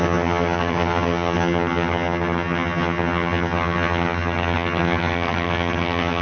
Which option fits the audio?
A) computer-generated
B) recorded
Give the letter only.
A